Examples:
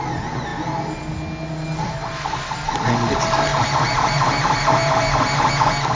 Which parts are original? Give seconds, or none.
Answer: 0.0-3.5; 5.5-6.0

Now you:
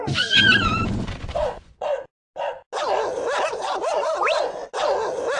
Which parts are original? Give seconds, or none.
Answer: 1.9-3.9; 4.6-5.4